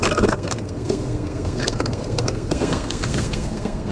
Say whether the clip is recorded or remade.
remade